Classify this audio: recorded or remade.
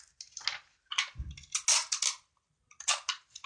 recorded